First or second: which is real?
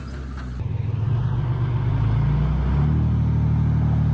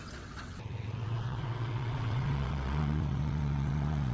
first